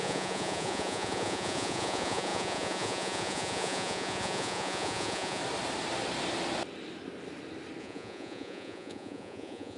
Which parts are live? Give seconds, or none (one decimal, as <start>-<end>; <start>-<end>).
5.4-7.8